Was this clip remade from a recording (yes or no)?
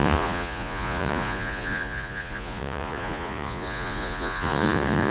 yes